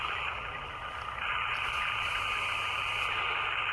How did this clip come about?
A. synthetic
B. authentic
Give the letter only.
B